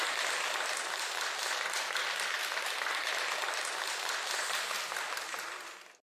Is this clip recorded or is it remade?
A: recorded